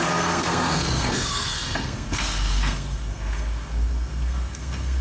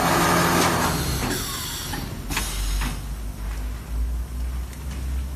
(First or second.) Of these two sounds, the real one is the second